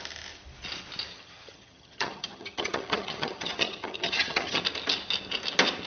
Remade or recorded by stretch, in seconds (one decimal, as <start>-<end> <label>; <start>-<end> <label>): 0.0-1.1 recorded; 1.1-4.6 remade; 4.6-5.9 recorded